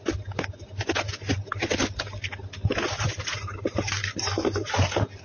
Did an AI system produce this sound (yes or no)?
no